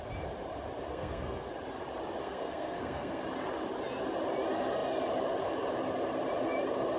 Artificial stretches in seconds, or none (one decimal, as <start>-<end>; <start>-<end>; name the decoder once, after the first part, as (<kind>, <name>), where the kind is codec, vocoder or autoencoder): 0.9-1.5 (codec, SNAC); 2.2-3.2